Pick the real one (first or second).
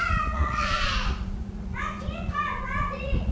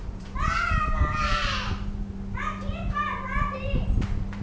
second